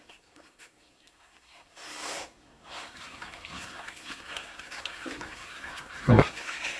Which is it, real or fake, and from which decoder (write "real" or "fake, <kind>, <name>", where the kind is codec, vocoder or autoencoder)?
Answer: fake, codec, SNAC